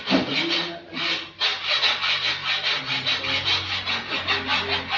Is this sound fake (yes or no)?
no